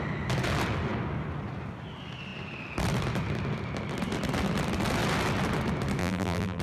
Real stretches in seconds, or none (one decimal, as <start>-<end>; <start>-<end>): 0.0-6.0